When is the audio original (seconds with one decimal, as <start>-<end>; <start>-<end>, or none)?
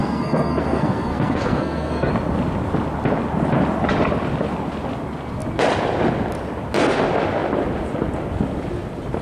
2.1-9.2